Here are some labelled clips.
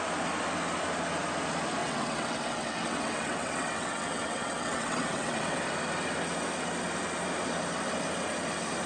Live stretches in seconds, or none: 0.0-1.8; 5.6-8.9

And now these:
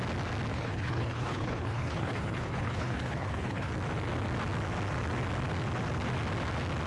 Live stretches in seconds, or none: 0.0-0.5; 3.7-6.9

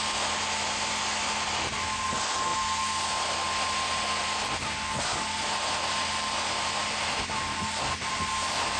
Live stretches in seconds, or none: 0.0-8.8

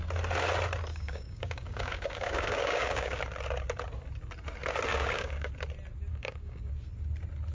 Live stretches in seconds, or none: 0.0-0.9; 3.2-4.9; 5.5-6.1; 6.7-7.5

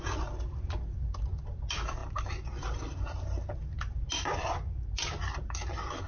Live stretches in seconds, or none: 0.0-6.1

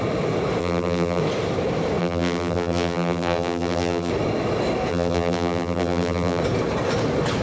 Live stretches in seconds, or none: 0.0-0.6; 1.2-2.0; 4.1-4.9; 6.4-7.4